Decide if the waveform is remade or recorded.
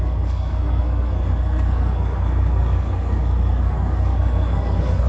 remade